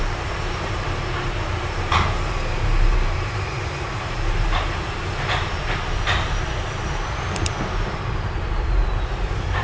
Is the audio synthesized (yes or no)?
yes